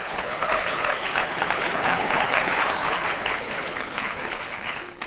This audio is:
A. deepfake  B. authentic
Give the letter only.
A